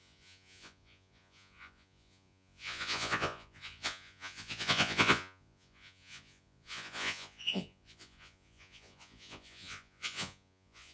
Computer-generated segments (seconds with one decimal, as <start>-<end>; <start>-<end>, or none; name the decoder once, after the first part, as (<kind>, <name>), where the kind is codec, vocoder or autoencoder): 0.0-10.9 (vocoder, Vocos)